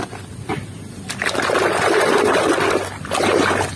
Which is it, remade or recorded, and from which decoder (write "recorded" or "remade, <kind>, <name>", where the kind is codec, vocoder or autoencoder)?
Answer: recorded